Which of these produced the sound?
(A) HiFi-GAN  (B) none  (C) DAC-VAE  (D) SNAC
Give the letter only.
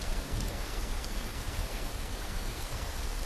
D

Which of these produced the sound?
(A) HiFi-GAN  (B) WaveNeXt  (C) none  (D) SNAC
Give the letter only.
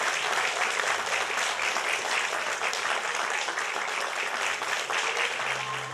C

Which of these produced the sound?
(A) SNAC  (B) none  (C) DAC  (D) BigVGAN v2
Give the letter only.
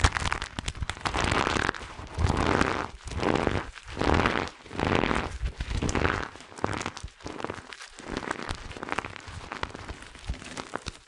B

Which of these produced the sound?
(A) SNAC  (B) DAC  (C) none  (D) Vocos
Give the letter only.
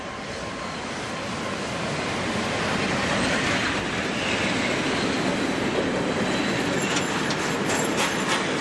C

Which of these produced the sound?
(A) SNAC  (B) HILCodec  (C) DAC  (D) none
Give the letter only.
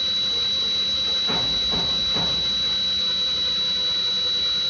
D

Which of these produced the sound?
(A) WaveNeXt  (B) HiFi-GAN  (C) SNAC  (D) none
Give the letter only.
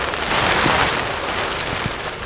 D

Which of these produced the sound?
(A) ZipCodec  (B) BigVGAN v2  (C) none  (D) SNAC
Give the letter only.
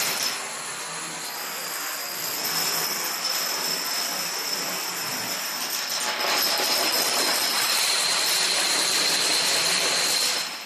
C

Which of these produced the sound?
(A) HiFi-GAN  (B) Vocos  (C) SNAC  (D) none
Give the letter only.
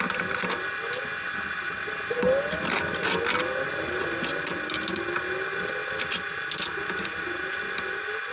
D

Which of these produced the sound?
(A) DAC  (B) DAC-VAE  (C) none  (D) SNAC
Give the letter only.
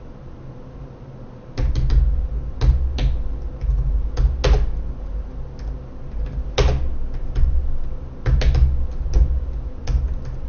C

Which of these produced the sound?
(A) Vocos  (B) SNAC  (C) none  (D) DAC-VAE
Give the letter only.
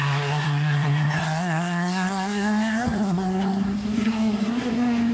B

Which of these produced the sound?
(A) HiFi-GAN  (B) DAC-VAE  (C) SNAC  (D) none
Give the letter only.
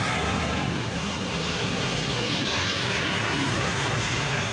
C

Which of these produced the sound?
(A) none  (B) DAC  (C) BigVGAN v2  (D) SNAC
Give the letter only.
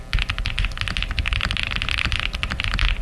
A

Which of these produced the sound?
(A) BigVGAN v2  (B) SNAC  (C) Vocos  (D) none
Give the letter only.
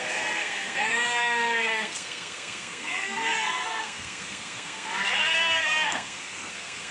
B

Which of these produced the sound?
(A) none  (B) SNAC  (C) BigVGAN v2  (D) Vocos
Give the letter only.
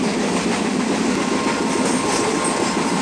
A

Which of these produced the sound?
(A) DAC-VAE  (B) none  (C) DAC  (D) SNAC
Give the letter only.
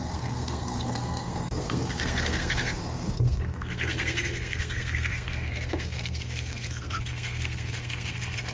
D